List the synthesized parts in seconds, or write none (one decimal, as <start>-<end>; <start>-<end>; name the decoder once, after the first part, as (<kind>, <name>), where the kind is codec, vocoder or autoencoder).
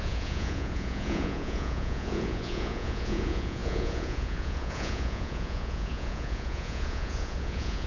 0.0-7.9 (vocoder, Vocos)